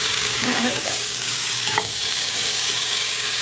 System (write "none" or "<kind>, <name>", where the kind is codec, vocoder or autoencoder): codec, DAC